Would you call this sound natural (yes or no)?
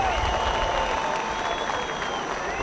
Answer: yes